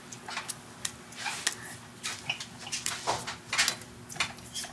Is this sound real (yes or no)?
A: yes